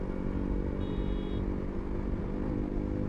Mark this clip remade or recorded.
recorded